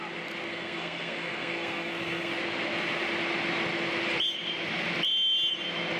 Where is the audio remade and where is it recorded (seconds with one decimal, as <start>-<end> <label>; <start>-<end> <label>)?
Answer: 0.0-0.5 recorded; 0.5-2.3 remade; 2.3-6.0 recorded